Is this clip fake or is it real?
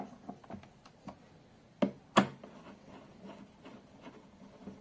real